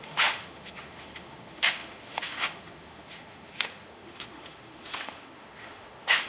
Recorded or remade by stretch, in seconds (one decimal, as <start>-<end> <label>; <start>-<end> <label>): 0.0-6.3 remade

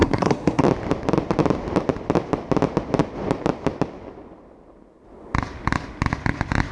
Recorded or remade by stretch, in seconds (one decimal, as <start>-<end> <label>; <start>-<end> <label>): 0.0-0.6 remade; 0.6-6.7 recorded

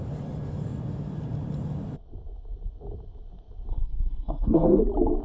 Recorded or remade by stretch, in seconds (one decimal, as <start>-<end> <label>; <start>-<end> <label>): 0.0-3.7 recorded; 3.7-4.8 remade; 4.8-5.2 recorded

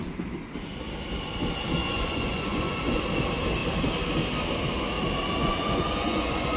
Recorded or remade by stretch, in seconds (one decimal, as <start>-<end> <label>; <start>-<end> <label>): 0.0-1.8 recorded; 1.8-3.0 remade; 3.0-5.4 recorded; 5.4-6.6 remade

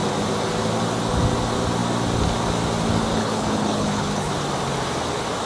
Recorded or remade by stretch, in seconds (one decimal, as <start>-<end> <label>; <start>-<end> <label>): 0.0-3.1 recorded; 3.1-4.3 remade; 4.3-5.5 recorded